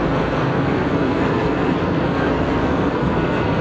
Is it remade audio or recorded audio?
remade